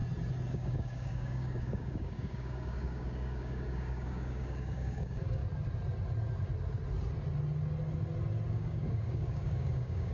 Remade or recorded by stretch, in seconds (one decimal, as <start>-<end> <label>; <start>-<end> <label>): 0.0-0.5 recorded; 0.5-5.4 remade; 5.4-8.5 recorded; 8.5-10.1 remade